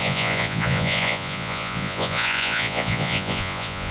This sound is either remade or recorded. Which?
remade